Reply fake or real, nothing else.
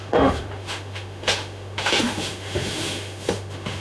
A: fake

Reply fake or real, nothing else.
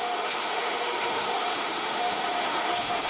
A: fake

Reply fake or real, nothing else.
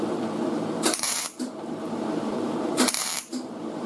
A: fake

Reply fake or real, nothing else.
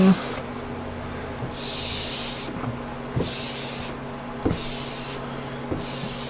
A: real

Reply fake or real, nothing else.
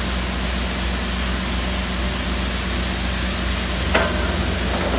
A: real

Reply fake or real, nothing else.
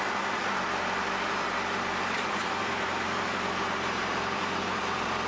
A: fake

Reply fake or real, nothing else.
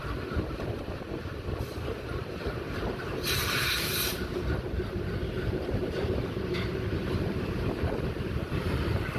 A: fake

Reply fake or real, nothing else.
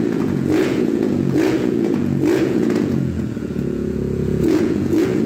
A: fake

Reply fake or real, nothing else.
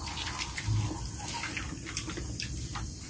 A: real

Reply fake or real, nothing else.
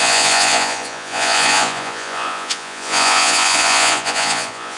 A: fake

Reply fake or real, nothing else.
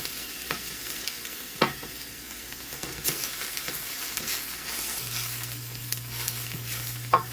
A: fake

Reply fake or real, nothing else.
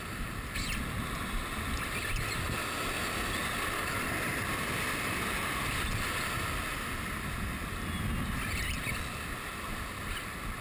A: real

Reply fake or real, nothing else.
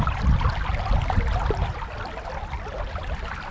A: real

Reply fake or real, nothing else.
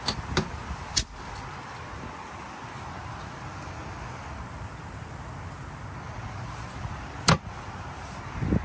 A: real